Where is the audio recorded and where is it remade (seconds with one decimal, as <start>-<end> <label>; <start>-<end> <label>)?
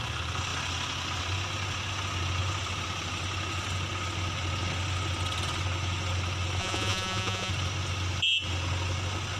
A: 0.0-6.6 recorded; 6.6-7.5 remade; 7.5-9.4 recorded